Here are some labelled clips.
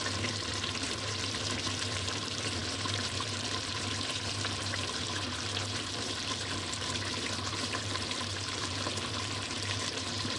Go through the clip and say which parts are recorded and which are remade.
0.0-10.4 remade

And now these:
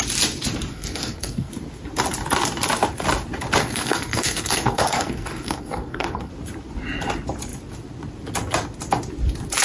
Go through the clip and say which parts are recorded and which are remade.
0.0-0.7 recorded; 0.7-1.5 remade; 1.5-3.6 recorded; 3.6-6.3 remade; 6.3-9.6 recorded

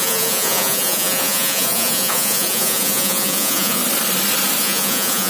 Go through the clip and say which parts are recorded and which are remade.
0.0-3.8 remade; 3.8-4.6 recorded; 4.6-5.3 remade

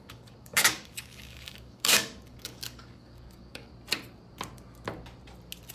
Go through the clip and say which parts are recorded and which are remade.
0.0-3.7 remade; 3.7-5.7 recorded

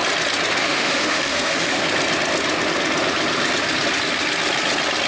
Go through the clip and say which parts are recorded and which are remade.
0.0-0.6 recorded; 0.6-1.8 remade; 1.8-5.1 recorded

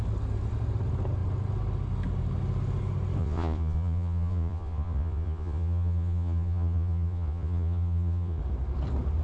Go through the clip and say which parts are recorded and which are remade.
0.0-3.2 recorded; 3.2-8.4 remade; 8.4-9.2 recorded